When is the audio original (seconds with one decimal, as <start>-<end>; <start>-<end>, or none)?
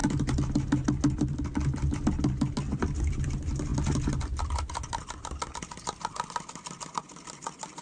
0.0-7.8